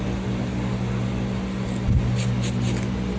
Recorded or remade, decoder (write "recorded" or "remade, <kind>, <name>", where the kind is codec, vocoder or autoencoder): recorded